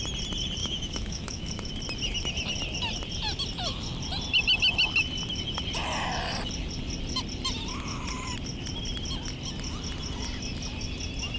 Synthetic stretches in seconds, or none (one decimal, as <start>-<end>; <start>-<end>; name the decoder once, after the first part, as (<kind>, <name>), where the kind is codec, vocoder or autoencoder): 0.6-1.7 (autoencoder, DAC-VAE)